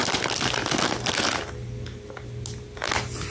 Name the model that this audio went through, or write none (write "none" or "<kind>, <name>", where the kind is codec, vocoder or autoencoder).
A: none